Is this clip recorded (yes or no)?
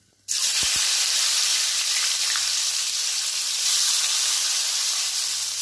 no